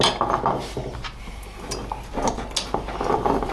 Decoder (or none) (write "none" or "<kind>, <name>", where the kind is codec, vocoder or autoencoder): none